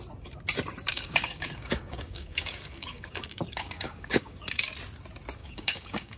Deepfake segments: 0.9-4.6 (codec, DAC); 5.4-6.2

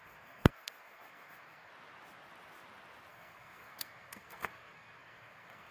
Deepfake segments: 0.0-1.7 (codec, SNAC); 3.1-5.7

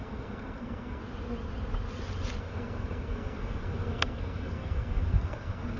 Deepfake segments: 0.0-1.0 (codec, SNAC); 2.4-5.8

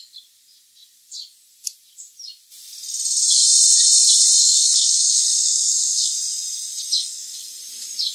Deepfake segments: 4.4-6.1 (codec, SNAC); 7.0-7.6

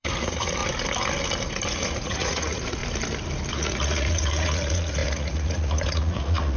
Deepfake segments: 0.0-0.6 (vocoder, Vocos); 1.7-2.8; 3.5-6.6

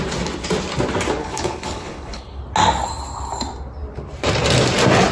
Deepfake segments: 1.2-2.4 (codec, HILCodec)

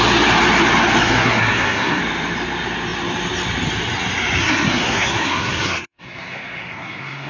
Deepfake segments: 1.0-2.0 (codec, SNAC); 4.4-7.3